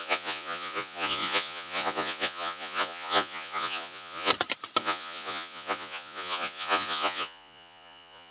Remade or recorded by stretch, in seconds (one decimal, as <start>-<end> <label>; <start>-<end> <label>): 0.0-4.3 remade; 4.3-4.8 recorded; 4.8-8.3 remade